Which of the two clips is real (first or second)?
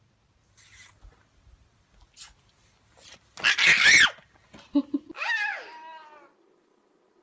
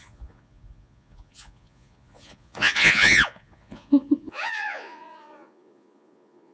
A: first